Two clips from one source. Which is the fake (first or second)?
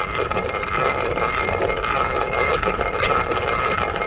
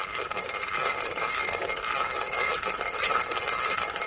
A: second